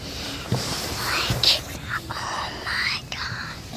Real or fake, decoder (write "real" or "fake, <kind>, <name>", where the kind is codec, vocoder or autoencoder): fake, vocoder, BigVGAN v2